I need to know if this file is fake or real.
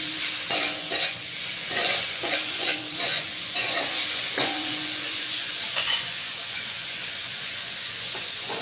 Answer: fake